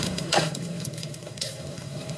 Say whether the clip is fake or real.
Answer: fake